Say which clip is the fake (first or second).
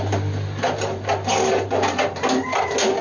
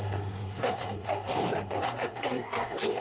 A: second